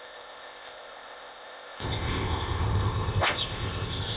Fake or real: fake